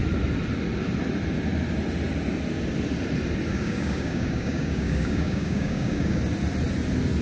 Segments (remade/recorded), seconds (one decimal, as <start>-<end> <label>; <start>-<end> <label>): 0.0-3.5 recorded; 3.5-6.2 remade; 6.2-7.2 recorded